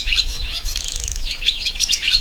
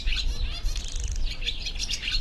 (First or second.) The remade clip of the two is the first